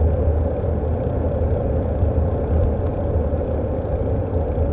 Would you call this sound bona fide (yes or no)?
yes